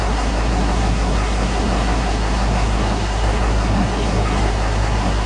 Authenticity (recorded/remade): remade